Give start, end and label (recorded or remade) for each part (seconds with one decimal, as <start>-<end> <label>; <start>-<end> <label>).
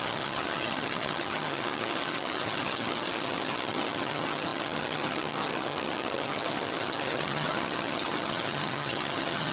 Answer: 0.0-9.5 remade